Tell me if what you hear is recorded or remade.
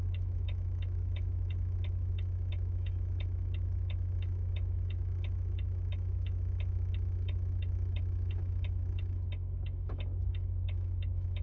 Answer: remade